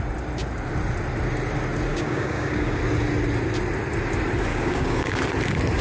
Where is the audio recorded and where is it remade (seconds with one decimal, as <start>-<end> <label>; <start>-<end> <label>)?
0.0-1.9 recorded; 1.9-2.8 remade; 2.8-4.5 recorded; 4.5-5.2 remade; 5.2-5.8 recorded